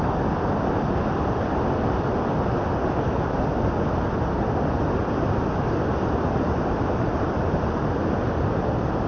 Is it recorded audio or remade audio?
recorded